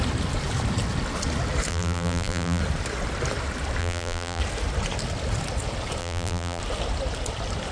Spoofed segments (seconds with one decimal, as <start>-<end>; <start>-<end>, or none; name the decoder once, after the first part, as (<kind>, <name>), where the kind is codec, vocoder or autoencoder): 1.7-2.6 (vocoder, BigVGAN v2); 3.8-4.4; 6.0-6.6